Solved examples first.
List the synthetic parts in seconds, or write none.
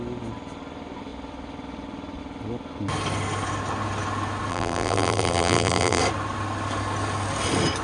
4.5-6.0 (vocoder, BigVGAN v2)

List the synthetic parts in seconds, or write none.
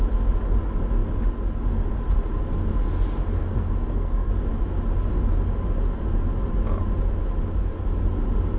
3.4-4.3 (codec, SNAC)